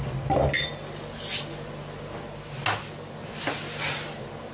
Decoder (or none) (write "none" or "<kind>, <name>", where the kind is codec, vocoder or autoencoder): none